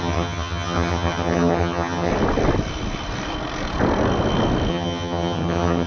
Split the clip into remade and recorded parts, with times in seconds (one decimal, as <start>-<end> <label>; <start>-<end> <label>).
0.0-2.1 remade; 2.1-4.7 recorded; 4.7-5.9 remade